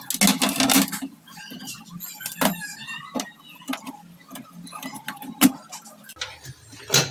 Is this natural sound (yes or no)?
yes